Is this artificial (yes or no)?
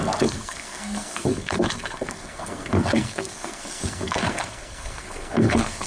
yes